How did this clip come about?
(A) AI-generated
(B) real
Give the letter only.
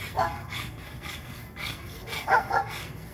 A